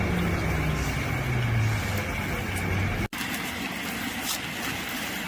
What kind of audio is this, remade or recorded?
recorded